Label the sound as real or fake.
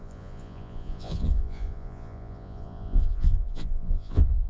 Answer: fake